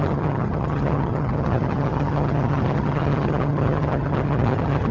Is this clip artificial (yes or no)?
yes